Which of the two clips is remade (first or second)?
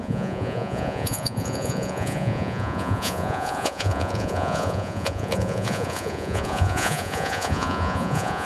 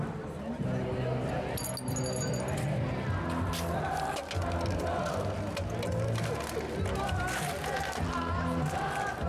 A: first